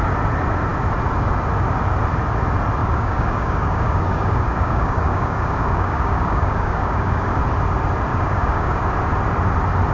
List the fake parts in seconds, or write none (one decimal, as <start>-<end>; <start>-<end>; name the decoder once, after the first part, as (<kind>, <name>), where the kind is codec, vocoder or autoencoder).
2.8-7.4 (codec, DAC); 8.1-8.8